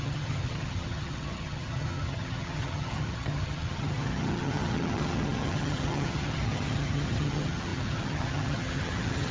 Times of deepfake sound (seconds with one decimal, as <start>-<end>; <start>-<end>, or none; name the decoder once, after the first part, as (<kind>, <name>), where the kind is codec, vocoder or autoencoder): 0.0-9.3 (vocoder, HiFi-GAN)